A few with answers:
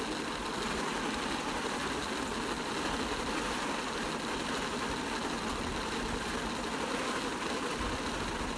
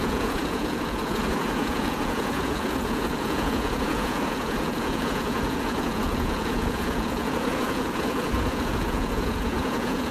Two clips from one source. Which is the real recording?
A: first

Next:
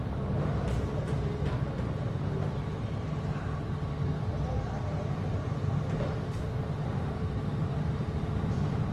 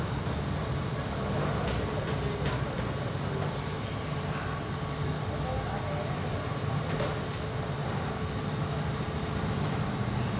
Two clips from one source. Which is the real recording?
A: second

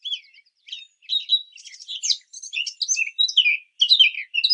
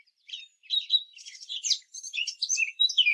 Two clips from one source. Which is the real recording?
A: first